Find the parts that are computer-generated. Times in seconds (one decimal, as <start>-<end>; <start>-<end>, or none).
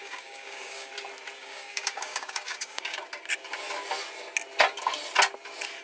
0.0-0.9; 1.4-3.0